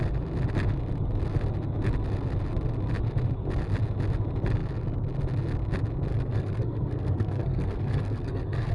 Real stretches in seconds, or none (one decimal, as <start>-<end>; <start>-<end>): 0.0-6.1